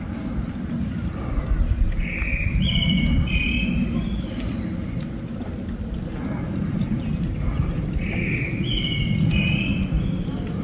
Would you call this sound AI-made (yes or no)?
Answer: no